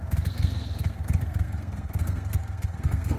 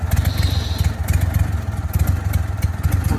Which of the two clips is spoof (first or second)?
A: first